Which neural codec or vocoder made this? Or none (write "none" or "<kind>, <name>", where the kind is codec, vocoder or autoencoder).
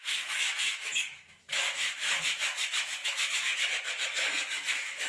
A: autoencoder, DAC-VAE